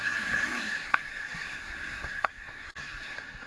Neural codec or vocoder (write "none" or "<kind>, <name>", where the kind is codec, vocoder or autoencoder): codec, SNAC